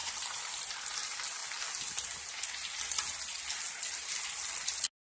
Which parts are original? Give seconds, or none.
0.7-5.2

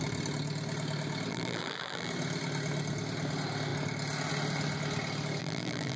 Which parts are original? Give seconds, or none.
0.0-1.3; 2.1-5.4